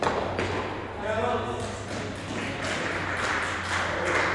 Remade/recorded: recorded